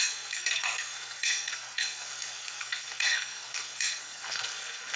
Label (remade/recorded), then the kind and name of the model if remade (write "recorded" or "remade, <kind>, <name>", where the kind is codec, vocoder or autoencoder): remade, codec, SNAC